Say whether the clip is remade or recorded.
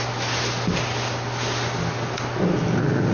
recorded